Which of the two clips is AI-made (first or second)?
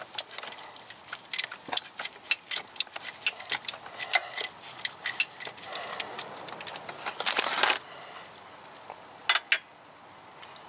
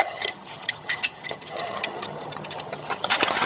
second